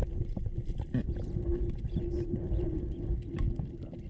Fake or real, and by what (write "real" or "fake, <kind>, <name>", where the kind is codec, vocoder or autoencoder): real